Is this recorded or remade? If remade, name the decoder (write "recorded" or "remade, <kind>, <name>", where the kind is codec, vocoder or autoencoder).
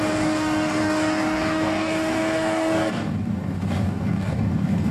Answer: remade, codec, DAC